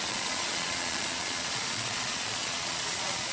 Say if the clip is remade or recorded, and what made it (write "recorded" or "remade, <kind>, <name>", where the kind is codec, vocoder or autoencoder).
remade, vocoder, Vocos